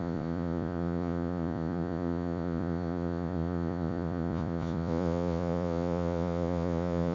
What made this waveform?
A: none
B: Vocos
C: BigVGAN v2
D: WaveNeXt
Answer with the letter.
B